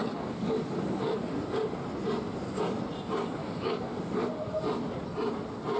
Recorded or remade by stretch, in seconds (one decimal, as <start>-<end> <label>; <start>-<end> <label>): 0.0-1.3 remade; 1.3-3.4 recorded; 3.4-4.5 remade; 4.5-5.8 recorded